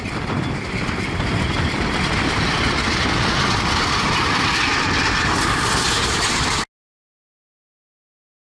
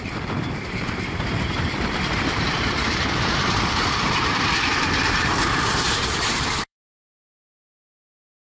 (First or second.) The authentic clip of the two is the first